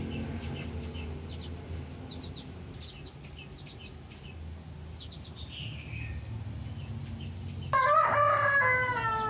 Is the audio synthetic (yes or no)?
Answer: no